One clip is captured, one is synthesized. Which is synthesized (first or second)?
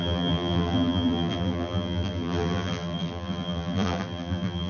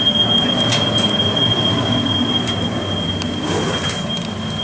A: first